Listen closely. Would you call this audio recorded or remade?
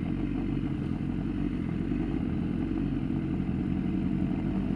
recorded